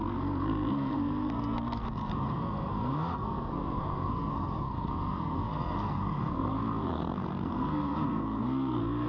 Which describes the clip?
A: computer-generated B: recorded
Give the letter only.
A